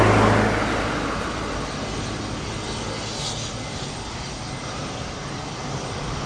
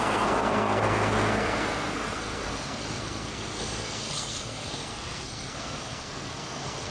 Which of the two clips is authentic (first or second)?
first